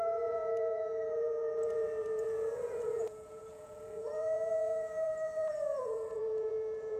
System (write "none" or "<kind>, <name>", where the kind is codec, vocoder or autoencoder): vocoder, Vocos